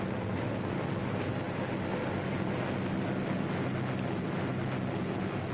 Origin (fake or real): real